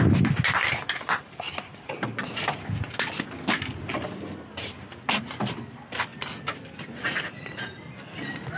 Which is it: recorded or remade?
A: recorded